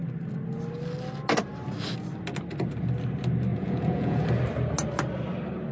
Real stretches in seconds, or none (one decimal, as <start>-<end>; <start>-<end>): 0.0-3.5; 4.3-5.7